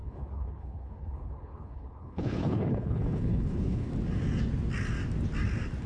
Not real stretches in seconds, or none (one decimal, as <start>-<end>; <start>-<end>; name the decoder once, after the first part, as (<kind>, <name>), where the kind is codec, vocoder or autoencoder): 0.0-3.9 (codec, HILCodec)